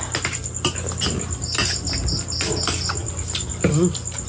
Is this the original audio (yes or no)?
yes